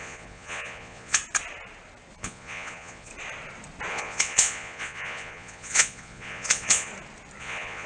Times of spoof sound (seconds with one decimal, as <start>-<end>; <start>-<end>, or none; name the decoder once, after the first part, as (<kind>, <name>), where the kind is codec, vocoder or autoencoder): 0.0-1.2 (vocoder, Vocos); 2.2-3.1; 3.9-6.9; 7.4-7.9